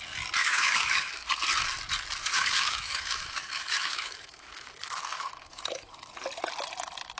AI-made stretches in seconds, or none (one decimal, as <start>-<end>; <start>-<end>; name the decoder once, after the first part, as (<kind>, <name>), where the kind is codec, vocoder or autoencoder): 0.4-1.3 (autoencoder, DAC-VAE); 2.2-6.1